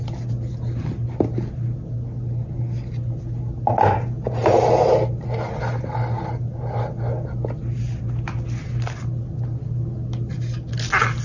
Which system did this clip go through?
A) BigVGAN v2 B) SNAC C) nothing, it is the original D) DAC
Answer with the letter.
C